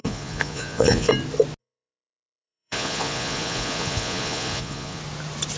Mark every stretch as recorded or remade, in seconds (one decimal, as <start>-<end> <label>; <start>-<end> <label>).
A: 0.0-1.1 remade; 1.1-1.6 recorded; 1.6-5.0 remade; 5.0-5.6 recorded